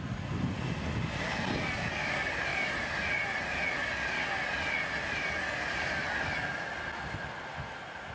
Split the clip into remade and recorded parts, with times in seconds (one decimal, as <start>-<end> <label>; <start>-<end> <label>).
0.0-2.5 recorded; 2.5-3.5 remade; 3.5-8.1 recorded